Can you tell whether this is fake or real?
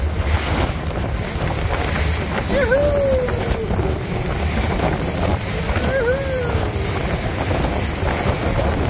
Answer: real